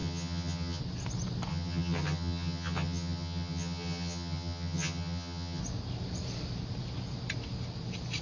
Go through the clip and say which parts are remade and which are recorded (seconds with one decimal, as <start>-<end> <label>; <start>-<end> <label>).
0.0-0.8 remade; 0.8-1.5 recorded; 1.5-5.6 remade; 5.6-8.2 recorded